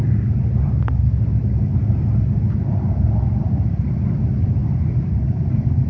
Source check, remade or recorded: remade